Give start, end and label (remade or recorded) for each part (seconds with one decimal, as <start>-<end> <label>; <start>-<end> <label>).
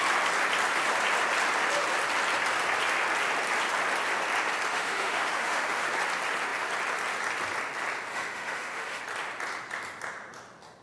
0.0-4.7 recorded; 4.7-5.9 remade; 5.9-8.1 recorded; 8.1-9.0 remade; 9.0-10.8 recorded